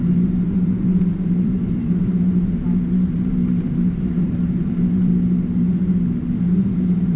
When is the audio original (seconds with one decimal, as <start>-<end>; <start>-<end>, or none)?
5.1-6.6